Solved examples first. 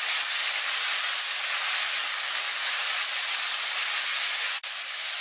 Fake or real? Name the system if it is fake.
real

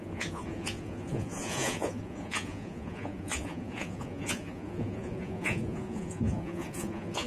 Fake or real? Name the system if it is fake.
fake, vocoder, Vocos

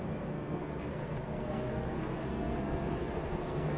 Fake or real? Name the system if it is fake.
fake, codec, SNAC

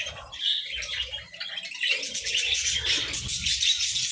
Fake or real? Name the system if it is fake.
real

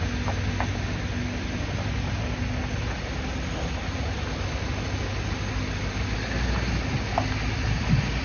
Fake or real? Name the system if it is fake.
real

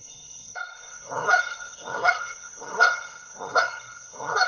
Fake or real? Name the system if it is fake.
fake, codec, SNAC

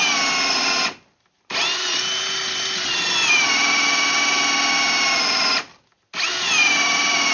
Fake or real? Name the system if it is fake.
real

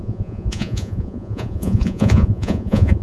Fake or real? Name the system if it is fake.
fake, vocoder, Vocos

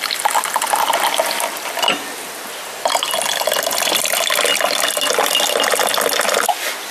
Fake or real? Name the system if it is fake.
real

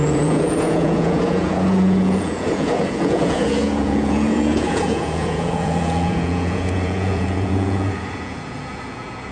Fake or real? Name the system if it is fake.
fake, vocoder, Vocos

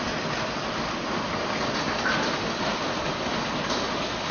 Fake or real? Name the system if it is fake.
real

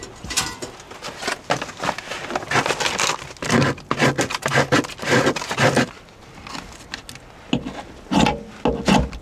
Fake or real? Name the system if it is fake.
real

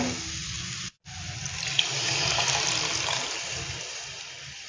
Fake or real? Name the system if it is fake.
fake, vocoder, BigVGAN v2